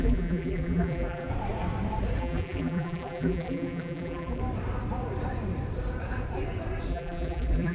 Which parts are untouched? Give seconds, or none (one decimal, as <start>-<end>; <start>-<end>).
1.3-2.2; 4.4-6.9